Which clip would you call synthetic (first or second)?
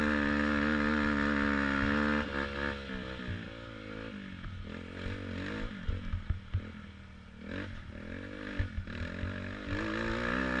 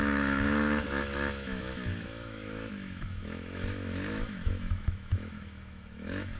second